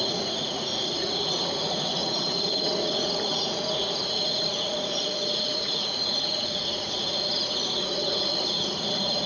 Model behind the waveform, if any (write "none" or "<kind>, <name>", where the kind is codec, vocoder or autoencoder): vocoder, Vocos